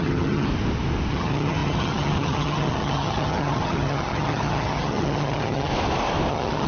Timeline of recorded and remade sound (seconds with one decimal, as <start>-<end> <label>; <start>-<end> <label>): 0.0-0.5 remade; 0.5-1.1 recorded; 1.1-5.7 remade; 5.7-6.3 recorded; 6.3-6.7 remade